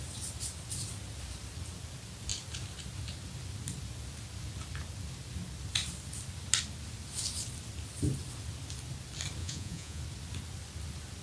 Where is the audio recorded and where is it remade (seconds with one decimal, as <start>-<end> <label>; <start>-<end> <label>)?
0.0-9.4 recorded; 9.4-10.0 remade; 10.0-11.2 recorded